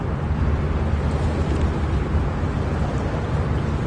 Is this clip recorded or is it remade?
recorded